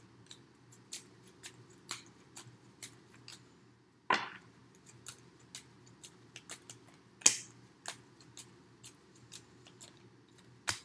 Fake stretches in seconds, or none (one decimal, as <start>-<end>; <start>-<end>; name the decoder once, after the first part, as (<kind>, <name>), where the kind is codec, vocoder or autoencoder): none